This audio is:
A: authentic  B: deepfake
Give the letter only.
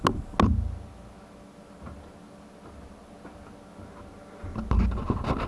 A